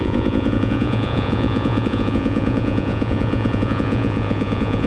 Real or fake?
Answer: fake